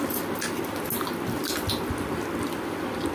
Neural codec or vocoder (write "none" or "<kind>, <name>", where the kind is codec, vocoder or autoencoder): none